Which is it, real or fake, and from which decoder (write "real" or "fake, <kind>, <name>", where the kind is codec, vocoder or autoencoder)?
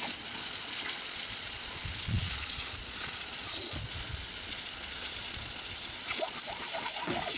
fake, vocoder, Vocos